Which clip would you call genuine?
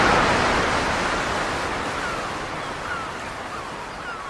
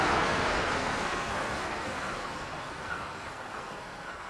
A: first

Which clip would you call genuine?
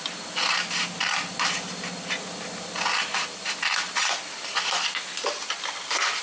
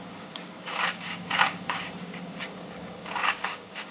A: first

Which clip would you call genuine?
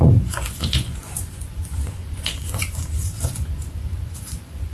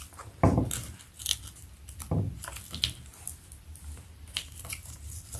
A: second